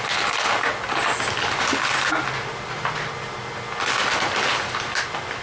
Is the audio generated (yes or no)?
no